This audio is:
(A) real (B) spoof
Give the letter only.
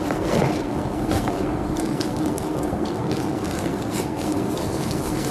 B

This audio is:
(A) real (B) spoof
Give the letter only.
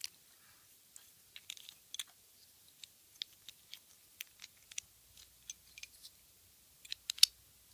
A